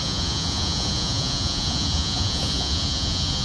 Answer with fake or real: fake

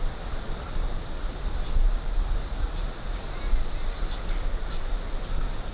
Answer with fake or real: real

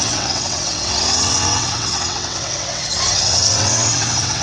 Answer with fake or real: fake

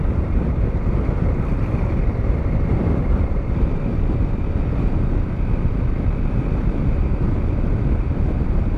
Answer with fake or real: real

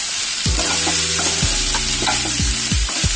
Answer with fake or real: real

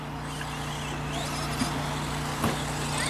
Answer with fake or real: real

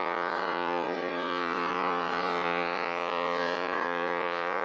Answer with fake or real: fake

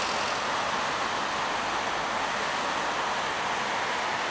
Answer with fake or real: real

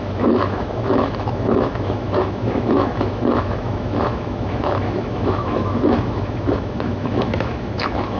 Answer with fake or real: fake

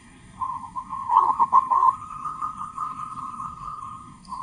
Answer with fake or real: fake